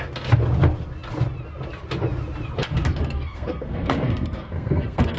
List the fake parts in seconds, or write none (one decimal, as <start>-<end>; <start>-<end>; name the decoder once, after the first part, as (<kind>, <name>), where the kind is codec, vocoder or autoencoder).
2.9-5.2 (codec, SNAC)